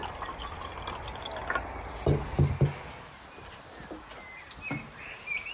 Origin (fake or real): real